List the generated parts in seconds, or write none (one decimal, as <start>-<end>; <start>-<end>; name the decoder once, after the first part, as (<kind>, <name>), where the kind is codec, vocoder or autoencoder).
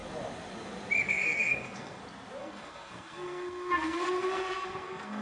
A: 1.0-2.0 (codec, SNAC); 2.4-5.2